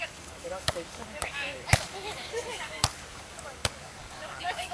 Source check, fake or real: fake